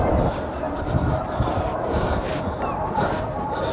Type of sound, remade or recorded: remade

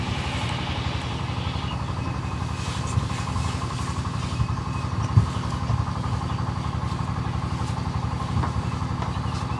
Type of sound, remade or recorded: recorded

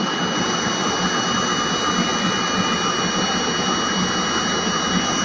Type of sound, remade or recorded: recorded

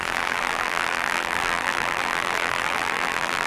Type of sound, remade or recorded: remade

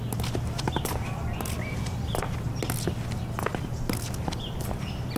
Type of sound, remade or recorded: recorded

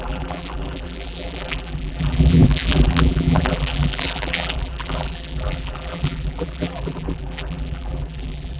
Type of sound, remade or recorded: remade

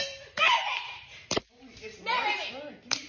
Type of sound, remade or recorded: remade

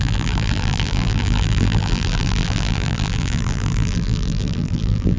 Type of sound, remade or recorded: remade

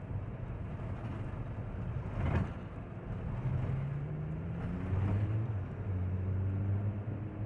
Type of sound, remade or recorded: recorded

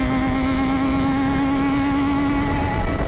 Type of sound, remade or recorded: recorded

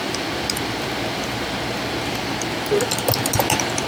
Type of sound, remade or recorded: recorded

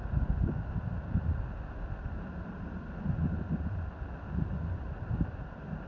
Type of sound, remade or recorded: recorded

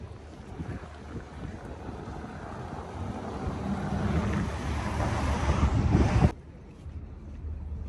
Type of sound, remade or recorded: recorded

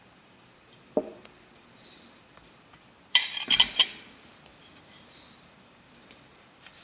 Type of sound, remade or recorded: remade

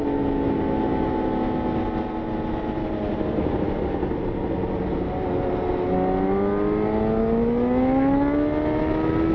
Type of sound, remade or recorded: recorded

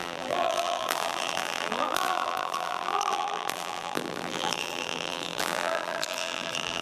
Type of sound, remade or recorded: remade